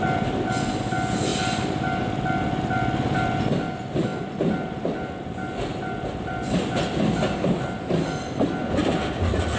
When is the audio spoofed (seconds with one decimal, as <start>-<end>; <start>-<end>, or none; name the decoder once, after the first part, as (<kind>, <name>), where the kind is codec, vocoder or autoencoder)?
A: none